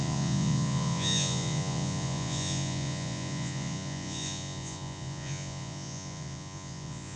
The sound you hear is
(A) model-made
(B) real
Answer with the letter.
A